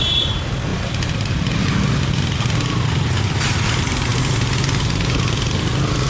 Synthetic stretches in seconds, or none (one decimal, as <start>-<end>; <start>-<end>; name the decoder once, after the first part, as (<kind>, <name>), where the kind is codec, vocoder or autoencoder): none